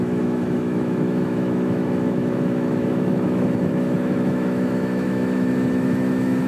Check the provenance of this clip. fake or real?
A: fake